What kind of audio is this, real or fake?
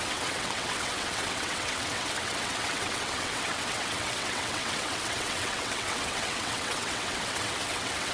fake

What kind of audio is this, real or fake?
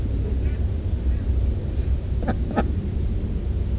real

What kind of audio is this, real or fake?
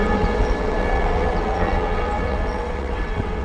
fake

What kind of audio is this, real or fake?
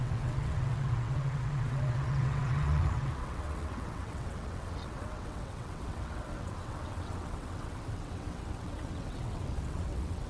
fake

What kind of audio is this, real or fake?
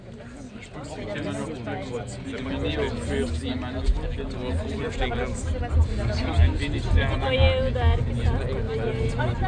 real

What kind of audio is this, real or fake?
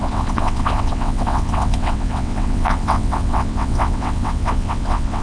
fake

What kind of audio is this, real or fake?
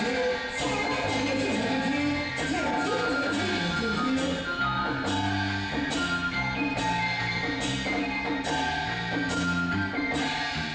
real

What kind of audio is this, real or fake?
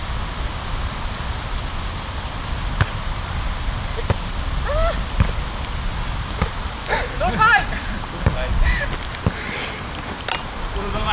real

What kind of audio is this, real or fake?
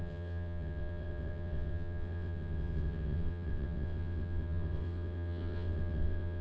fake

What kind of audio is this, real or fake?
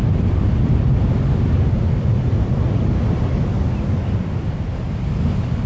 real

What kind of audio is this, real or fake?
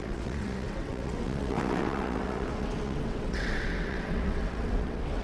fake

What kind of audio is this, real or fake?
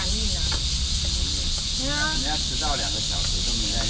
real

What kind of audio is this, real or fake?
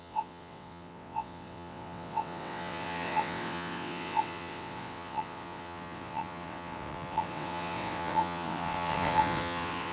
fake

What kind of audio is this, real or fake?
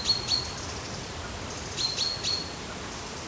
real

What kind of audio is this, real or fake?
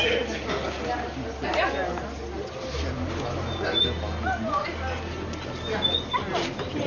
real